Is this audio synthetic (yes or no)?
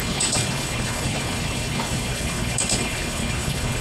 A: yes